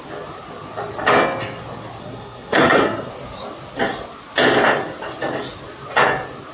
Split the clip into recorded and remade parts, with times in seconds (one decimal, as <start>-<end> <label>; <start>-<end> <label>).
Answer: 0.0-2.0 recorded; 2.0-3.1 remade; 3.1-6.5 recorded